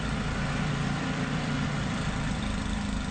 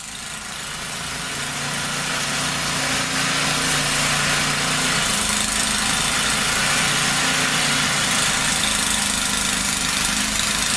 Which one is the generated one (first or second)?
first